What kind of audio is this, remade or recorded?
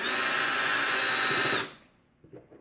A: remade